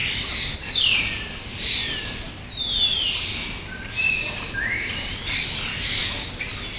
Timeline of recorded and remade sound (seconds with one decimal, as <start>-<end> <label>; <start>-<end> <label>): 0.0-5.7 recorded; 5.7-6.3 remade; 6.3-6.8 recorded

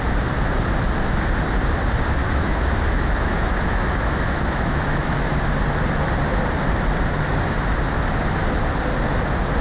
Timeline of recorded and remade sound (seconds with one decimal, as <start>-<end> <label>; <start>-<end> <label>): 0.0-2.2 recorded; 2.2-5.1 remade; 5.1-9.6 recorded

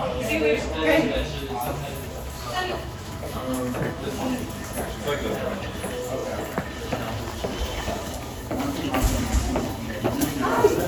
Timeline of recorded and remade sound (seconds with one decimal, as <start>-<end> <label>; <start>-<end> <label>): 0.0-2.7 recorded; 2.7-4.2 remade; 4.2-10.9 recorded